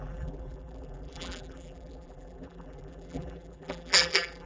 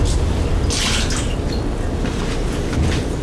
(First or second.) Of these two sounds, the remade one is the first